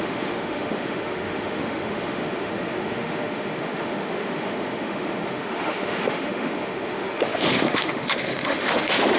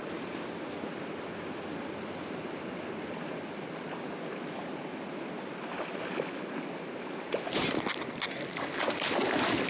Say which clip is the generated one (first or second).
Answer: first